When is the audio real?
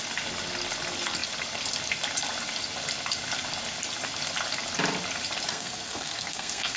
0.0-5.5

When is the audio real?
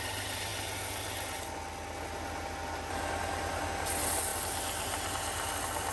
0.0-5.9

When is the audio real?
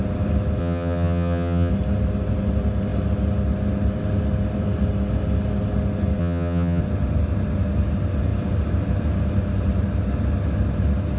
0.0-0.6; 1.7-6.2; 6.8-11.2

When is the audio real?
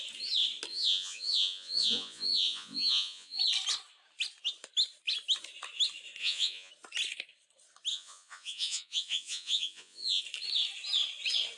0.0-0.7; 3.4-6.2; 6.7-7.9; 10.2-11.6